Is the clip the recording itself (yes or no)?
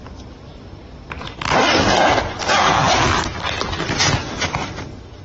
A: yes